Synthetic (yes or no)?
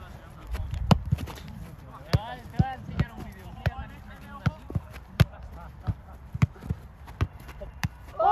yes